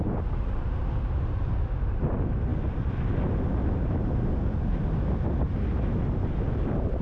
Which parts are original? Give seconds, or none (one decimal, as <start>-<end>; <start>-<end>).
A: 0.0-7.0